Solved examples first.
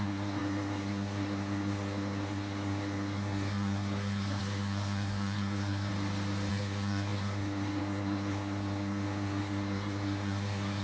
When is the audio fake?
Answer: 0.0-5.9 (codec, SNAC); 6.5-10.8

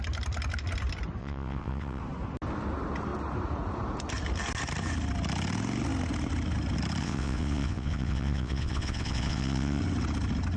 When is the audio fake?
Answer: 1.2-2.0 (vocoder, WaveNeXt); 7.0-9.8